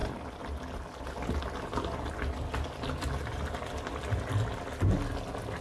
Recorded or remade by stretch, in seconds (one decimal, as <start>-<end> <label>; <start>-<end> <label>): 0.0-5.6 recorded